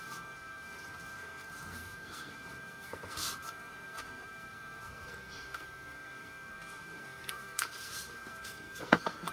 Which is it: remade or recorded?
remade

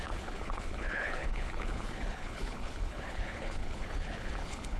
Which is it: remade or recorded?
remade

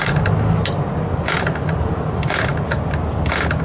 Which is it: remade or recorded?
recorded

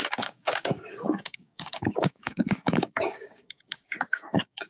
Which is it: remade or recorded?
remade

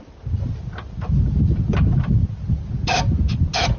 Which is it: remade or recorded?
recorded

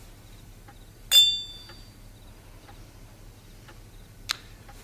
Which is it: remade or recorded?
recorded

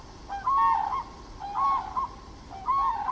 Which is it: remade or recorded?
recorded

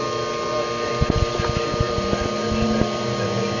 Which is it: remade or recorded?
recorded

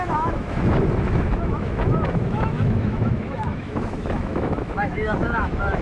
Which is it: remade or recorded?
remade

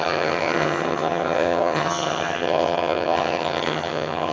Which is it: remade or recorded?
remade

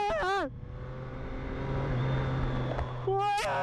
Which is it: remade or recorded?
recorded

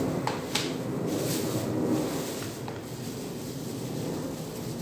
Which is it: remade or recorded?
recorded